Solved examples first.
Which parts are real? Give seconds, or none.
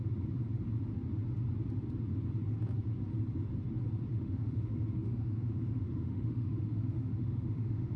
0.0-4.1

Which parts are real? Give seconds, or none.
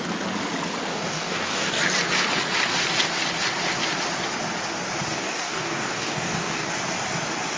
0.0-0.9; 1.8-5.1; 6.7-7.6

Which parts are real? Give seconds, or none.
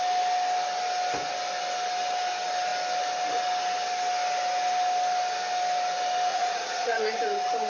0.0-6.3; 7.2-7.7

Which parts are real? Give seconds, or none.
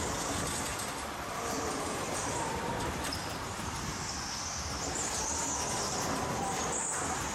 0.0-0.7; 3.0-7.3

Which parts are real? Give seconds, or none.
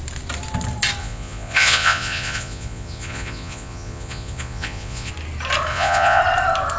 0.0-1.0; 5.1-5.7; 6.2-6.8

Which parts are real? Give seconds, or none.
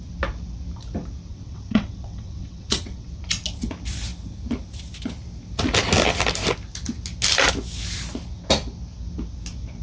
0.0-1.3; 3.1-9.8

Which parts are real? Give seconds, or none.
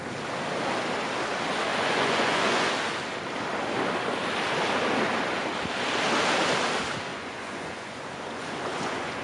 0.0-1.7; 2.7-7.1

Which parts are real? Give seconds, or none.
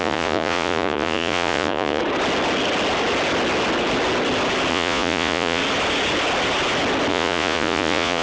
2.0-4.7; 5.6-7.1